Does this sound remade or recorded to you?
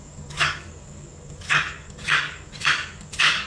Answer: remade